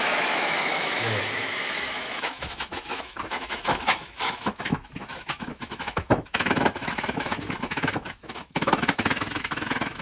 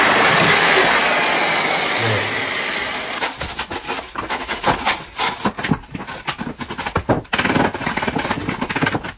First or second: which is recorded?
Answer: second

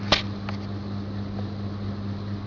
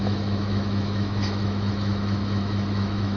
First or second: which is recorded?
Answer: first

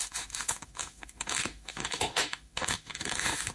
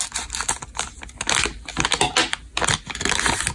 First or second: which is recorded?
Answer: second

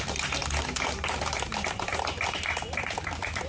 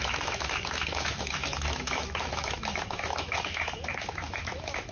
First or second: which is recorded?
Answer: first